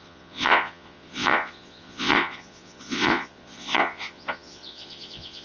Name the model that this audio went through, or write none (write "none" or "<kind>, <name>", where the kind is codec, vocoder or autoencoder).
vocoder, Vocos